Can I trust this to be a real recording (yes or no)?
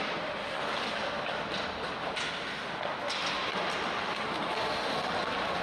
yes